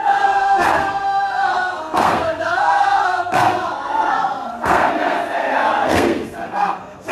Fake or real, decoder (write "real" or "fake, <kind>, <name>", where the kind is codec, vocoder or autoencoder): fake, codec, SNAC